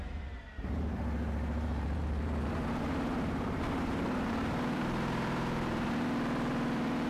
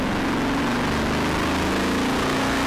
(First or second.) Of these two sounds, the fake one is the first